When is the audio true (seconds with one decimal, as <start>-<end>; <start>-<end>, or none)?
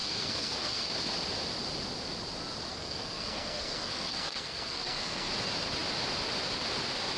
0.9-2.7; 5.3-7.2